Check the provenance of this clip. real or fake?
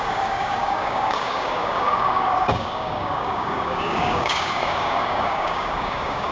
fake